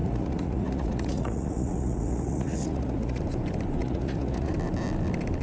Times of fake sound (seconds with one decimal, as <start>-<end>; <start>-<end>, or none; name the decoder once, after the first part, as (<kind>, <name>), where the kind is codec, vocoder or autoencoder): 0.0-3.2 (vocoder, Vocos); 3.8-4.5